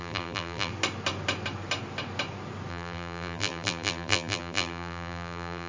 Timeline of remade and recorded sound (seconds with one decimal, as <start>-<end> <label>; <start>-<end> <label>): 0.0-0.7 remade; 0.7-2.7 recorded; 2.7-5.7 remade